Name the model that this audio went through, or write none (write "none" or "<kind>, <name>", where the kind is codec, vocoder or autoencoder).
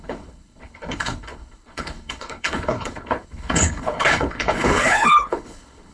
codec, HILCodec